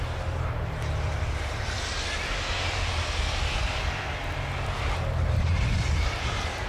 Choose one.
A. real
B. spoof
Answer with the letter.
A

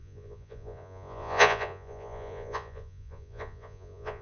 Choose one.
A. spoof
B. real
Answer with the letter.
A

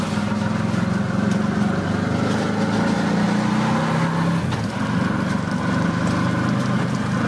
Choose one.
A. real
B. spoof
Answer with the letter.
A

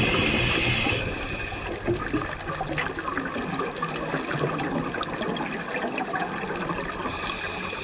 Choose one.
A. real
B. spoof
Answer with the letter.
A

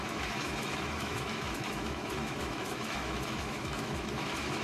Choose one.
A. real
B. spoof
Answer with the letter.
B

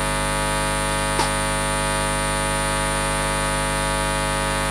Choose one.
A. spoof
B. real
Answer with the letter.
B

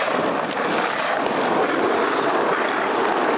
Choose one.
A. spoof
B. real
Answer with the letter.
B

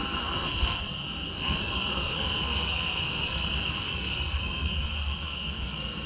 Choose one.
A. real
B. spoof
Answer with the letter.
B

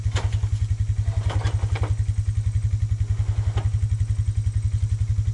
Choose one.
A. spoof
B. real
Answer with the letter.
B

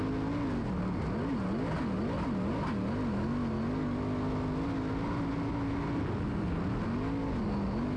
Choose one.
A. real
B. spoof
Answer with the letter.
A